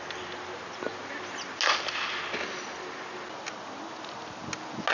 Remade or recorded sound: recorded